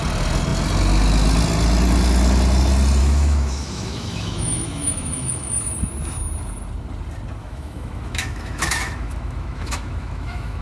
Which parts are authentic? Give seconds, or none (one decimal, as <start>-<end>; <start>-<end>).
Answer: 0.0-3.0; 5.7-7.4